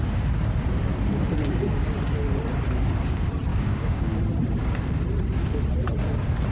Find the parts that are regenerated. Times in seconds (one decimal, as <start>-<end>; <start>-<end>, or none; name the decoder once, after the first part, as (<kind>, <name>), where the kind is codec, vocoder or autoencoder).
3.5-4.2 (codec, DAC)